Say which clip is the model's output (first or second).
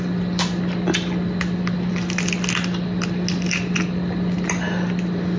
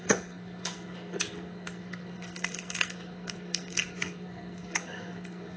second